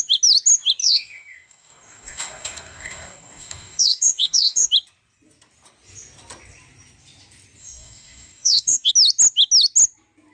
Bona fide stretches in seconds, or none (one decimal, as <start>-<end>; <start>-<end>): 0.0-0.8; 4.7-7.6; 8.9-10.3